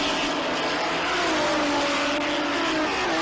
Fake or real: real